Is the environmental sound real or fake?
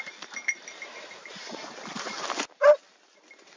real